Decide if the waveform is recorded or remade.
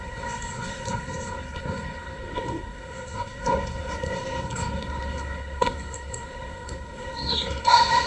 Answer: remade